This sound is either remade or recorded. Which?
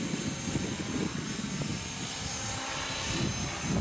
recorded